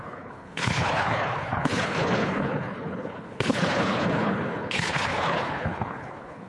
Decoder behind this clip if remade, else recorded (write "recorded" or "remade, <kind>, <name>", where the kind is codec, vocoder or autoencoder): remade, codec, HILCodec